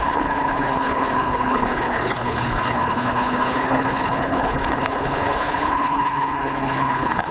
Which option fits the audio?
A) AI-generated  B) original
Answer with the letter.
A